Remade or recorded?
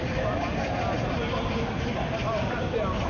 recorded